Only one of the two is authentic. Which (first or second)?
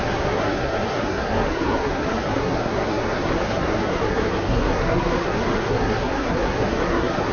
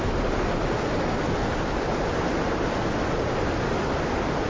second